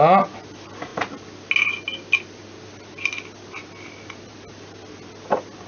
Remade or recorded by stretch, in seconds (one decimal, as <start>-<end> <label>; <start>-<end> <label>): 0.0-5.7 recorded